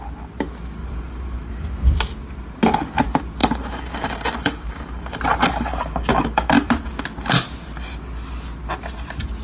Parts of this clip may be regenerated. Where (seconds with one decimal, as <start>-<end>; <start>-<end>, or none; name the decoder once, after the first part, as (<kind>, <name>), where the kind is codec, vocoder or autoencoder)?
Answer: 0.8-1.5 (vocoder, BigVGAN v2); 3.4-6.9